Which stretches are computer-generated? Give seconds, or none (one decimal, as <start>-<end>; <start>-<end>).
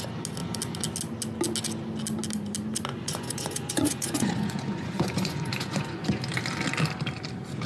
2.9-6.2